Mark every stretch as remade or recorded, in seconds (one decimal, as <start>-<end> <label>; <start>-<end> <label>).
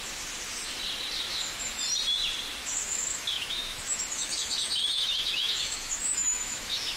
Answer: 0.0-1.3 recorded; 1.3-1.8 remade; 1.8-2.6 recorded; 2.6-7.0 remade